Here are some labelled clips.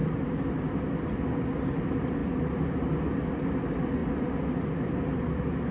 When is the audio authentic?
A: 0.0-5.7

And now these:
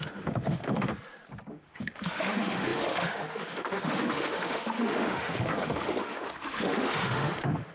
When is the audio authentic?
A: 0.9-1.5

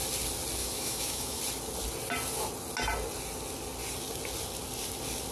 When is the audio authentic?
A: 0.0-0.6; 1.4-5.3

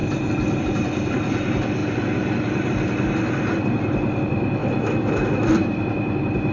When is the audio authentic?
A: 0.0-4.6; 5.5-6.5

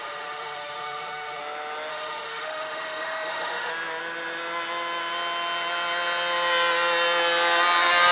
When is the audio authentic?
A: 1.4-1.9; 3.7-8.1